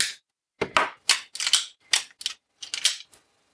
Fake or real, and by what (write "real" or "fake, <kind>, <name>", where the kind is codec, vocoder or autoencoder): real